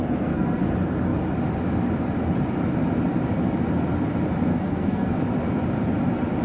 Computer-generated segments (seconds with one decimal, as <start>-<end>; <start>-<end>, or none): 0.0-0.6; 4.5-5.2